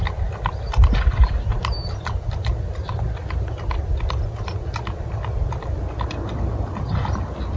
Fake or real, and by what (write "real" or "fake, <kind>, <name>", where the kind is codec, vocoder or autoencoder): real